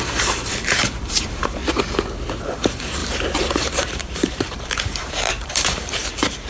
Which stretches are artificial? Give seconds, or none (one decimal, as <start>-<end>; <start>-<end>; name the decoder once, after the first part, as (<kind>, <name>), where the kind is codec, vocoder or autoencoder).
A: 0.0-1.6 (vocoder, BigVGAN v2); 2.4-6.5